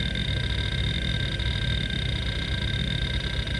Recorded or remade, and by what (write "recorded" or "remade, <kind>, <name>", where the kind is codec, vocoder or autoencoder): recorded